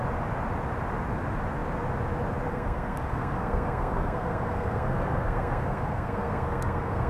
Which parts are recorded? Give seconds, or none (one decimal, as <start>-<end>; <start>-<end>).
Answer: 0.0-2.5